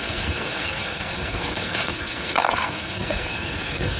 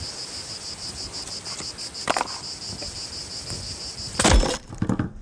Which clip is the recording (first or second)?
second